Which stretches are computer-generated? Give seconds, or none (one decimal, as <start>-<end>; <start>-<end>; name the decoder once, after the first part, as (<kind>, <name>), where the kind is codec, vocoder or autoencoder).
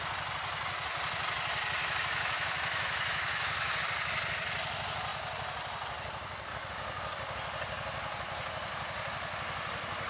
1.8-3.8 (autoencoder, DAC-VAE)